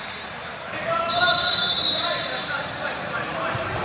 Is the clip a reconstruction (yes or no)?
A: yes